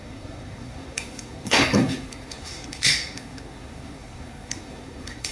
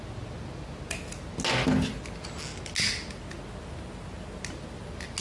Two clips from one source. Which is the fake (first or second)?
first